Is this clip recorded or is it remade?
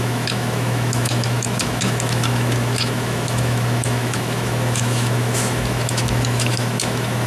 remade